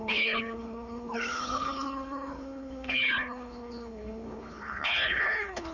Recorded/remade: remade